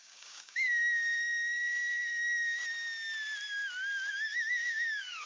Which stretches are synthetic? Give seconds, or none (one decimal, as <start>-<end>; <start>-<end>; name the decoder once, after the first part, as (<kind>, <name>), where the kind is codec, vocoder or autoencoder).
0.0-2.6 (codec, DAC); 4.1-5.3